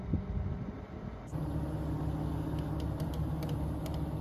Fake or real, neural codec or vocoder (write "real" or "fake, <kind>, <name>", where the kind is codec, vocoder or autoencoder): real